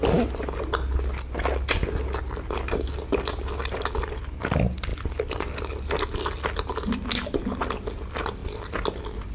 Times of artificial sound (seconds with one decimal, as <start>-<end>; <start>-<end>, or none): none